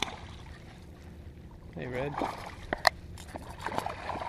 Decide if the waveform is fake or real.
fake